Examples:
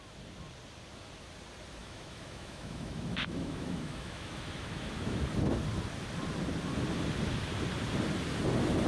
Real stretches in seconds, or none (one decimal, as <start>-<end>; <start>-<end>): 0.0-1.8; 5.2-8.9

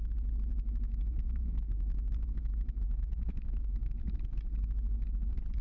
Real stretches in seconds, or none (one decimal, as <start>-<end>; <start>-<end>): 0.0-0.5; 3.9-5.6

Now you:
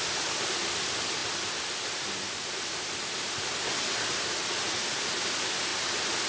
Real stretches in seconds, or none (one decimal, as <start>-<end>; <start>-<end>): 0.0-6.3